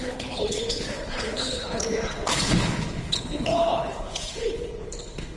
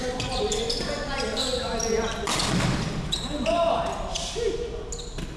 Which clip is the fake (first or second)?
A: first